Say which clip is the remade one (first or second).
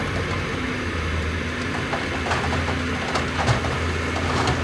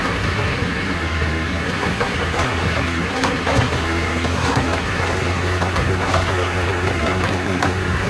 second